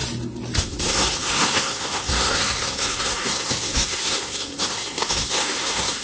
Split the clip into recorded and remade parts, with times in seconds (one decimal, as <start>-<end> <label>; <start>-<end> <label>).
0.0-0.6 recorded; 0.6-6.0 remade